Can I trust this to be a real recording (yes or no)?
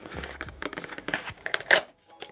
no